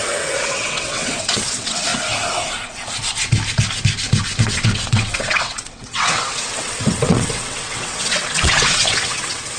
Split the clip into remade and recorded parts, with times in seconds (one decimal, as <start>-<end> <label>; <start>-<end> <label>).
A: 0.0-1.9 remade; 1.9-4.4 recorded; 4.4-9.6 remade